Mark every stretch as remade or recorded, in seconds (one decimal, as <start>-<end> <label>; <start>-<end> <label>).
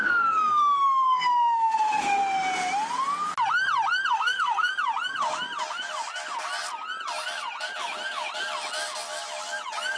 0.0-2.2 remade; 2.2-4.1 recorded; 4.1-4.7 remade; 4.7-10.0 recorded